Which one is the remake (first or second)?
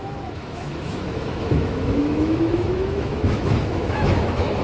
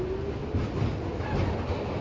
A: first